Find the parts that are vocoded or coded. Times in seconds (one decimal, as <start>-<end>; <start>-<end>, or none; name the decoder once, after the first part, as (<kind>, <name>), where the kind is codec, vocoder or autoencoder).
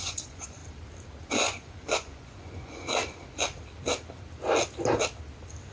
0.0-0.6 (vocoder, Vocos); 1.2-3.0